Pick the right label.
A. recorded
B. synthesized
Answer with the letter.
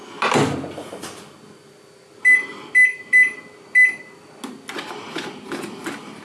A